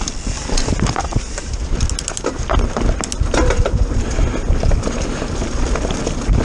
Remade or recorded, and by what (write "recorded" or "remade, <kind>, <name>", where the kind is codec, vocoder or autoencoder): recorded